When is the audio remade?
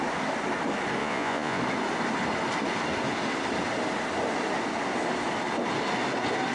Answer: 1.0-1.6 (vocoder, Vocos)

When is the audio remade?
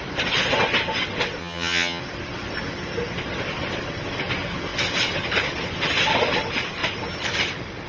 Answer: 1.4-2.0 (vocoder, HiFi-GAN)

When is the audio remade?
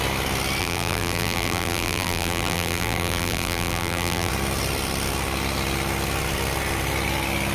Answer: 0.6-4.3 (vocoder, BigVGAN v2)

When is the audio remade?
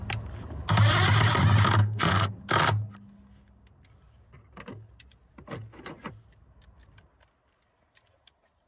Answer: 1.8-2.3 (codec, SNAC)